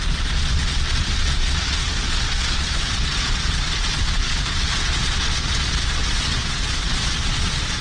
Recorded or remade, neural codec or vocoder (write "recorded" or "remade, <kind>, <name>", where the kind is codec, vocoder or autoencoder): remade, vocoder, Vocos